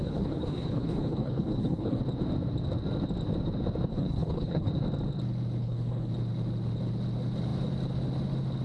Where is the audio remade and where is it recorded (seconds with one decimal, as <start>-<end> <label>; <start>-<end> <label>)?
0.0-2.0 remade; 2.0-3.9 recorded; 3.9-4.7 remade; 4.7-5.6 recorded; 5.6-6.1 remade; 6.1-8.6 recorded